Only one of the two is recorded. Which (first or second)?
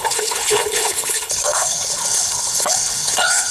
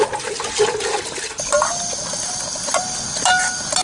second